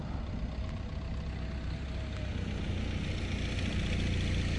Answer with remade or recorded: recorded